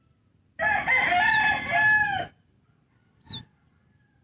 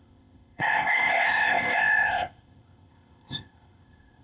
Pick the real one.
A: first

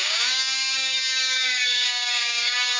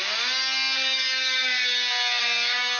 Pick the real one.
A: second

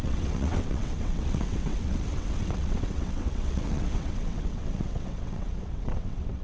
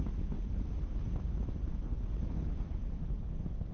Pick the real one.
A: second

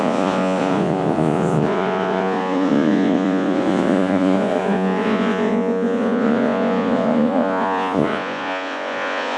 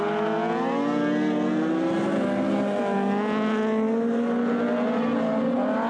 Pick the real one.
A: second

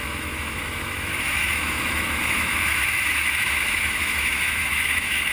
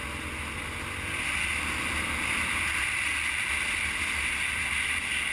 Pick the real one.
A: second